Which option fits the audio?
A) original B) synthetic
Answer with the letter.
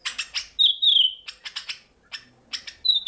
A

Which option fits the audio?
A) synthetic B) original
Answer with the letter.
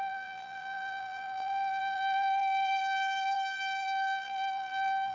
A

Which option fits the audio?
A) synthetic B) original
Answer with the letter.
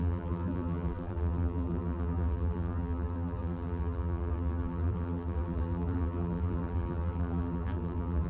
A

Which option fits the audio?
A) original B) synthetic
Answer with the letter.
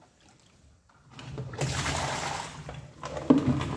B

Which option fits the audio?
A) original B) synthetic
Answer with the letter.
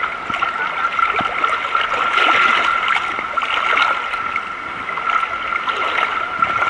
A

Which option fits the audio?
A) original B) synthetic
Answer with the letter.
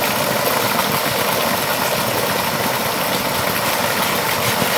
A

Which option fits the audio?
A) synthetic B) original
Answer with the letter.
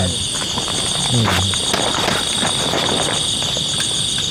B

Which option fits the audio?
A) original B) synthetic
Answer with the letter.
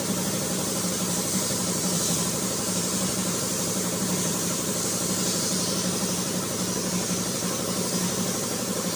B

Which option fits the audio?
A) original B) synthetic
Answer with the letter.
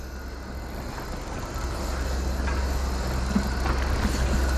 A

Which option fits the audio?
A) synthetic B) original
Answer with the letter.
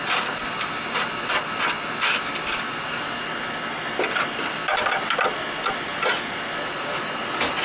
B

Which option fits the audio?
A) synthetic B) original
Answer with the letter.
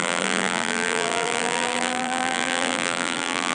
A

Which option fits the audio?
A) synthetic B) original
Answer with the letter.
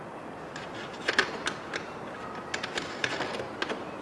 B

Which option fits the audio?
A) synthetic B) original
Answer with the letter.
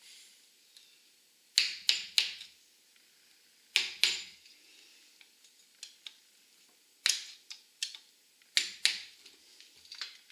B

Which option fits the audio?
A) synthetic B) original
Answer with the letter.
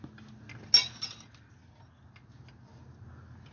B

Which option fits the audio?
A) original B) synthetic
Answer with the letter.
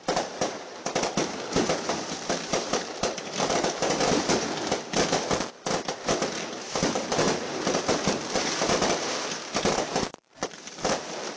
B